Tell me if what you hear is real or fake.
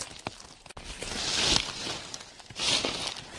real